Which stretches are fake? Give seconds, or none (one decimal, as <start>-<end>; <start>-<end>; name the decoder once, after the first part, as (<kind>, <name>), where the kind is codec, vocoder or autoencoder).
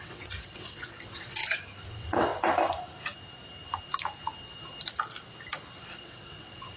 0.0-1.4 (vocoder, WaveNeXt); 1.9-2.3; 5.9-6.8